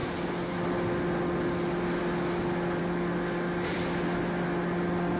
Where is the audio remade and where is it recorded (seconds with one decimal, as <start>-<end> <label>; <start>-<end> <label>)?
0.0-5.2 recorded